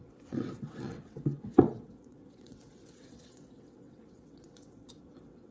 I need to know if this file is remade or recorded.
remade